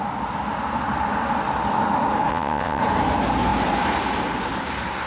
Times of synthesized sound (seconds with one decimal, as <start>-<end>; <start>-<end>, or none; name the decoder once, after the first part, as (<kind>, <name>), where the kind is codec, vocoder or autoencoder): 2.3-2.8 (vocoder, WaveNeXt)